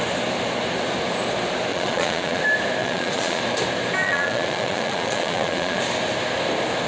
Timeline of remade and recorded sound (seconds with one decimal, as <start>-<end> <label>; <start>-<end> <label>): 0.0-1.7 recorded; 1.7-2.4 remade; 2.4-2.8 recorded; 2.8-3.4 remade; 3.4-4.0 recorded; 4.0-5.8 remade; 5.8-6.9 recorded